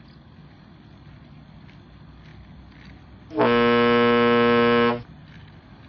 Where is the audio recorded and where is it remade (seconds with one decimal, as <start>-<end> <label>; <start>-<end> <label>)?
0.0-5.9 recorded